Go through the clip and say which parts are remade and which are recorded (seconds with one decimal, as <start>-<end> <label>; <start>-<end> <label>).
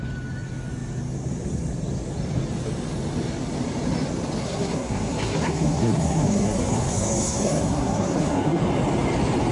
0.0-4.4 recorded; 4.4-8.6 remade; 8.6-9.5 recorded